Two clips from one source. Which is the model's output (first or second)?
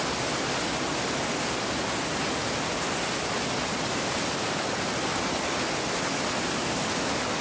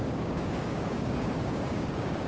second